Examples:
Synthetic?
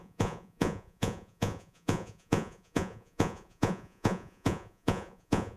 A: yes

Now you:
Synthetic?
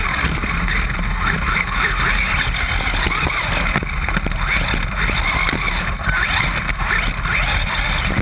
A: no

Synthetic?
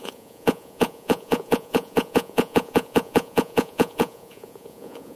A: yes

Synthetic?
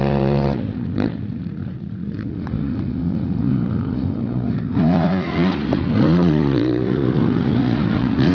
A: yes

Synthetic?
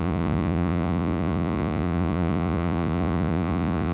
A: yes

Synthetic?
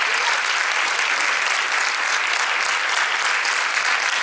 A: no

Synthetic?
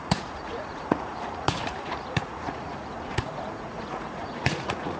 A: yes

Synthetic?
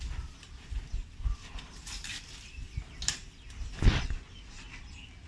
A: no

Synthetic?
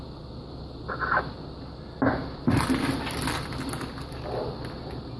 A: no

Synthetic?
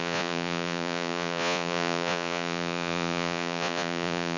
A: yes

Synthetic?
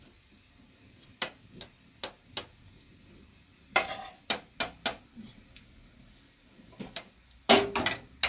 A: no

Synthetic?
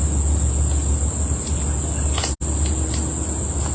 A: no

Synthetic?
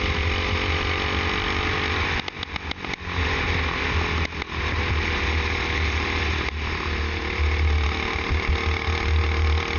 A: no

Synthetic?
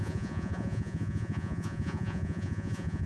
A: yes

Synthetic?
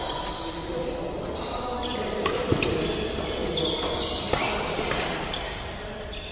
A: no